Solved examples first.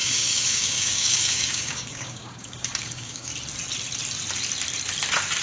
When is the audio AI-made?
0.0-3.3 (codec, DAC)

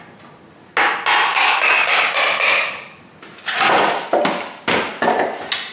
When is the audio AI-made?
1.3-1.9 (codec, DAC); 2.5-3.0

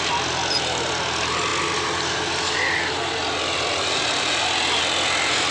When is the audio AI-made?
none

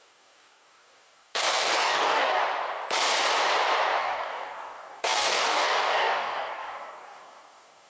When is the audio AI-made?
0.0-2.4 (codec, DAC); 4.0-7.9

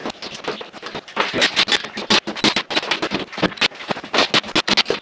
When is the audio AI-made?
none

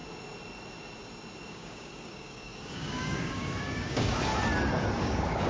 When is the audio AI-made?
1.5-4.3 (codec, DAC); 5.0-5.5